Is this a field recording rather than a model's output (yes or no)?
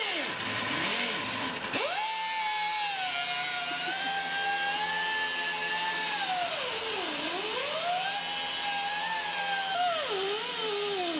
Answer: yes